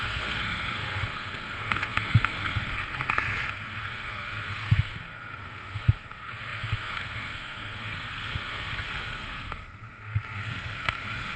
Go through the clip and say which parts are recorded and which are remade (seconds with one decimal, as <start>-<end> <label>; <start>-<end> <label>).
0.0-11.4 remade